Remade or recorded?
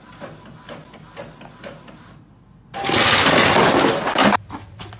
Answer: recorded